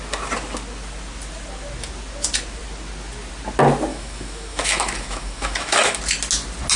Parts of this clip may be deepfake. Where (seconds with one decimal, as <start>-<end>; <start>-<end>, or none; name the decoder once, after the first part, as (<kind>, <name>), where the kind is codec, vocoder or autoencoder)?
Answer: 3.9-6.0 (autoencoder, DAC-VAE)